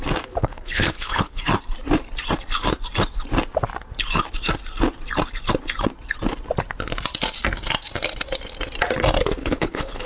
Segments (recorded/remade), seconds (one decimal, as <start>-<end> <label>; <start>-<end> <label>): 0.0-0.4 recorded; 0.4-1.4 remade; 1.4-9.4 recorded; 9.4-10.1 remade